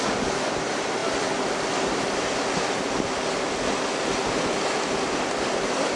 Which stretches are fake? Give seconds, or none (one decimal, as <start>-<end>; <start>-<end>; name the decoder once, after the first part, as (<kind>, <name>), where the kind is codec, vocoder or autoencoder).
none